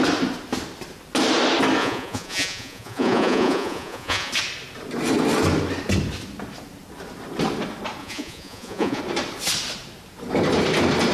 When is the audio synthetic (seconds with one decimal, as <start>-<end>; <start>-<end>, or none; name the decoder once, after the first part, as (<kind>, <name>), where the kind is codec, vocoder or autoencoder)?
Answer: 1.8-4.3 (vocoder, Vocos); 8.0-9.0